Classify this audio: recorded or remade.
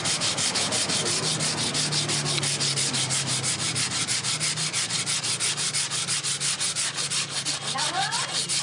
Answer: recorded